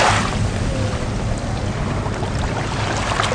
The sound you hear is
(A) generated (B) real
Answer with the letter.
B